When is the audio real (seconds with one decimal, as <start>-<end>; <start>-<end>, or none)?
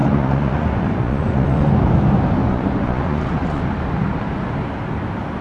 1.7-2.4; 3.6-5.4